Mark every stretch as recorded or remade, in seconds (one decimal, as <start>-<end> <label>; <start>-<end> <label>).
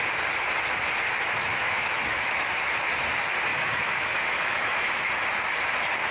0.0-1.5 recorded; 1.5-2.6 remade; 2.6-3.5 recorded; 3.5-5.0 remade; 5.0-6.1 recorded